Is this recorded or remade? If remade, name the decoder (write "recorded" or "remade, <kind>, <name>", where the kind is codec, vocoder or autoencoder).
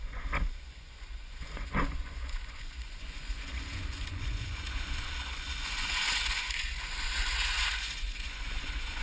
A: remade, vocoder, Vocos